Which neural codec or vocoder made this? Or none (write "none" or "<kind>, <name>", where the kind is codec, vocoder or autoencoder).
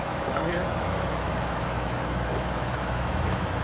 autoencoder, DAC-VAE